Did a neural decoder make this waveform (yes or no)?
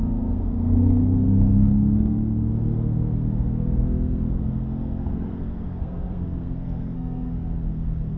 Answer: yes